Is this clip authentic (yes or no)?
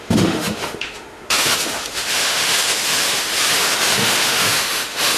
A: no